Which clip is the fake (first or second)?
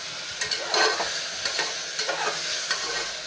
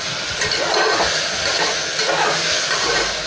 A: second